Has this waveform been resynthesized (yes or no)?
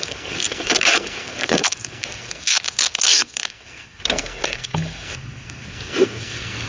yes